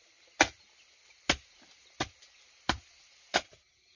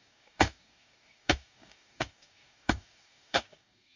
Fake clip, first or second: second